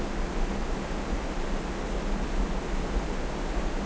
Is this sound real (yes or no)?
yes